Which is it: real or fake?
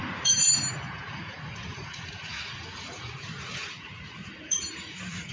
fake